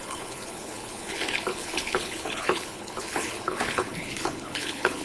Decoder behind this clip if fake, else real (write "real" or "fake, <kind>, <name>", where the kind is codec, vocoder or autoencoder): fake, codec, HILCodec